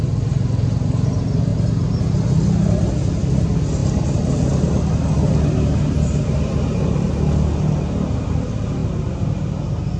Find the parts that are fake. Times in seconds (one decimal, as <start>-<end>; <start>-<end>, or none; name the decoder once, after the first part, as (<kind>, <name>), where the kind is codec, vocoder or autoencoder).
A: none